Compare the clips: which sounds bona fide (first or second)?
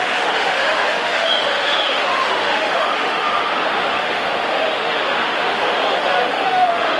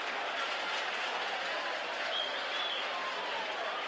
second